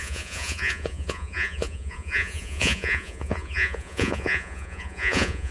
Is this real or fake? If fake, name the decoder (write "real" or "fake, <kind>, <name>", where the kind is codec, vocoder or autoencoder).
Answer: fake, vocoder, Vocos